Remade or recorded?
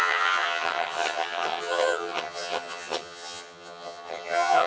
remade